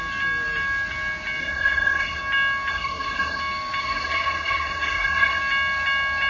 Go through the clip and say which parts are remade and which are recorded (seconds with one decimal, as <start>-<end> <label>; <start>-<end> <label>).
0.0-1.4 recorded; 1.4-2.2 remade; 2.2-2.7 recorded; 2.7-3.4 remade; 3.4-3.8 recorded; 3.8-5.4 remade; 5.4-6.3 recorded